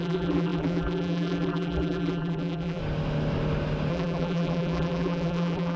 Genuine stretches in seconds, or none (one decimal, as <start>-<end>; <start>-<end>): 2.8-3.9